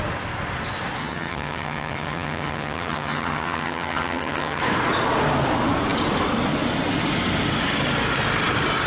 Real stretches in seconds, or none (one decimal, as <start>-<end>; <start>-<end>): 0.0-1.0; 4.6-8.9